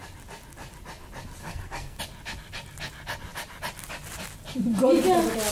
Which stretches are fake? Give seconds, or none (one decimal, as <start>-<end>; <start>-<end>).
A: 1.4-2.0